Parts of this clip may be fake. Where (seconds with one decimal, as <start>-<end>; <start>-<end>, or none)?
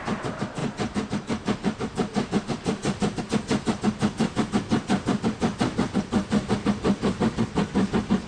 0.6-3.2